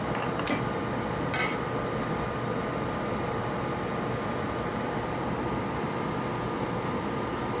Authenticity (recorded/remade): recorded